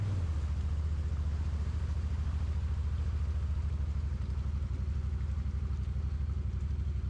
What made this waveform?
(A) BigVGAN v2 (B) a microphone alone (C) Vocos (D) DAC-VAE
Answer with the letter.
B